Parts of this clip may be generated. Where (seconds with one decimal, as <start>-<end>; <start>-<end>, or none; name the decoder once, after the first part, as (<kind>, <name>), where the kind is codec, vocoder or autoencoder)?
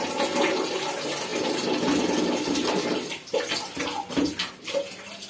none